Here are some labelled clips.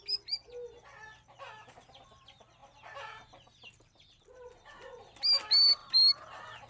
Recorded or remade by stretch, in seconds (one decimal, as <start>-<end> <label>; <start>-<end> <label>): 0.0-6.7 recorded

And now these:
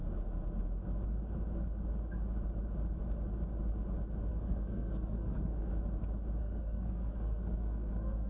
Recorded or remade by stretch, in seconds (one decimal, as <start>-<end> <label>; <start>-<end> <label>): 0.0-4.3 recorded; 4.3-5.7 remade; 5.7-6.4 recorded; 6.4-8.3 remade

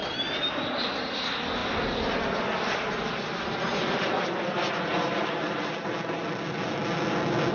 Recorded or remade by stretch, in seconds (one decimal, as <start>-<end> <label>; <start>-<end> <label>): 0.0-7.5 recorded

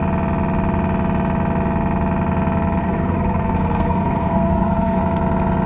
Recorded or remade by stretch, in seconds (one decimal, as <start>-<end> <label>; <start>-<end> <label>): 0.0-2.8 recorded; 2.8-5.0 remade; 5.0-5.7 recorded